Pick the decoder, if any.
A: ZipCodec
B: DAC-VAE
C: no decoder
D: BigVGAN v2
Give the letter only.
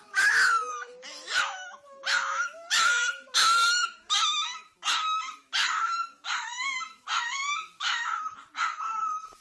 B